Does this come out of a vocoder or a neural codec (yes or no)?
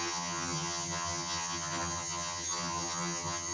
yes